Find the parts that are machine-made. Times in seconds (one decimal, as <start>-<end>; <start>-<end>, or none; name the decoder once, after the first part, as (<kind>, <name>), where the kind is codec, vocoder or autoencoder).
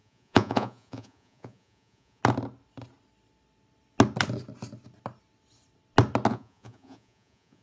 0.0-2.2 (vocoder, Vocos); 6.3-7.6